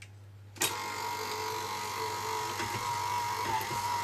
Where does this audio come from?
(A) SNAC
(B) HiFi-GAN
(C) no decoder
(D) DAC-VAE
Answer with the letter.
C